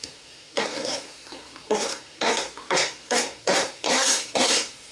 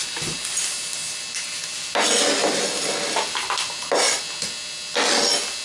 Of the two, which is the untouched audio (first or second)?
second